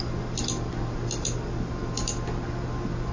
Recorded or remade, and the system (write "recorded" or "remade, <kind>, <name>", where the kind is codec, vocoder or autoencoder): recorded